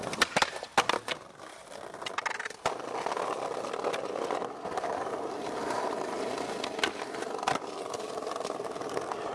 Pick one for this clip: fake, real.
real